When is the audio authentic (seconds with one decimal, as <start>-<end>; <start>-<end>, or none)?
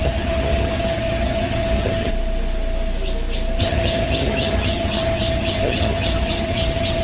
2.1-3.6